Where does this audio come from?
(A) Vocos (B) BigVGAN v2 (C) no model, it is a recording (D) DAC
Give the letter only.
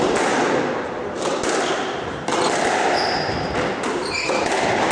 C